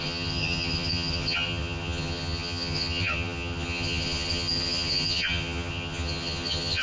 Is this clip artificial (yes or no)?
yes